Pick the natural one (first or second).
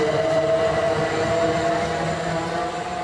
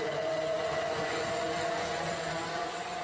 first